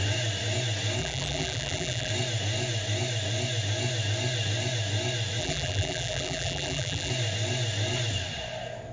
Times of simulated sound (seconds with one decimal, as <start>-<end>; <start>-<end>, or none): 1.0-2.1; 5.4-7.1